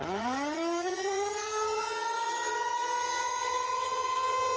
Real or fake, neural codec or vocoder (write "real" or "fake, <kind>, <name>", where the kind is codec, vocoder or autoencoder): fake, vocoder, HiFi-GAN